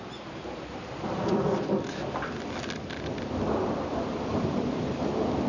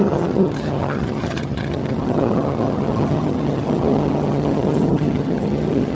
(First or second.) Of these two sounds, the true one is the first